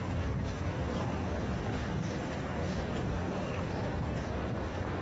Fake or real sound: fake